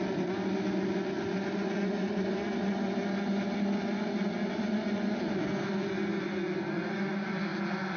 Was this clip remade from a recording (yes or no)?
no